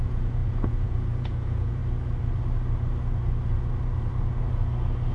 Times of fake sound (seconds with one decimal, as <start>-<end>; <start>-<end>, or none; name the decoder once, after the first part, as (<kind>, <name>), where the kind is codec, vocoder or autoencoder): 0.0-1.8 (vocoder, Vocos)